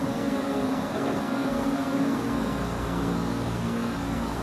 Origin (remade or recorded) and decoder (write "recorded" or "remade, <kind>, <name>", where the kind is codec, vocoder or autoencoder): remade, codec, SNAC